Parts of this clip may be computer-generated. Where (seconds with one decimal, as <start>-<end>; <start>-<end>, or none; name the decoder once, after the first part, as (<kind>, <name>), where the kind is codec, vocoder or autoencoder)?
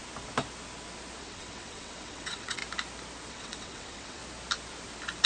1.2-2.6 (vocoder, WaveNeXt); 3.3-4.2